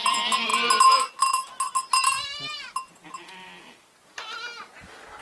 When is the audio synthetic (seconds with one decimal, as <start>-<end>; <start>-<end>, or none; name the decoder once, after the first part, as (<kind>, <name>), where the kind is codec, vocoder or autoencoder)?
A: none

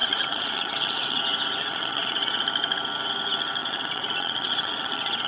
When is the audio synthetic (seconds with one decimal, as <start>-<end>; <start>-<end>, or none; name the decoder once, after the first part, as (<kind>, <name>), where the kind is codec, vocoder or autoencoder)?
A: 0.0-1.2 (vocoder, Vocos); 1.6-2.4; 3.6-5.3

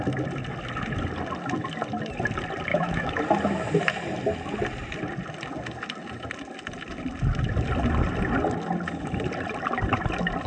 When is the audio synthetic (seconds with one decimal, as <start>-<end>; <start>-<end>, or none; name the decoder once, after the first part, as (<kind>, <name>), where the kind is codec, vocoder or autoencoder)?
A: 2.7-3.2 (autoencoder, DAC-VAE)

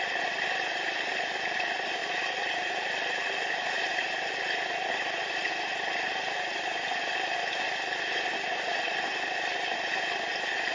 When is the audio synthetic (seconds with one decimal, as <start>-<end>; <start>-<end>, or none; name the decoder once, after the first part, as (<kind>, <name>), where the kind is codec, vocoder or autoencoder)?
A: none

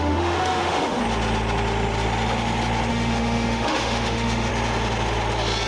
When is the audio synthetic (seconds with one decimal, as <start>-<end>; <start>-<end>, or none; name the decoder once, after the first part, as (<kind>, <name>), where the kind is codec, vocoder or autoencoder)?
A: 0.0-1.0 (autoencoder, DAC-VAE); 2.9-4.5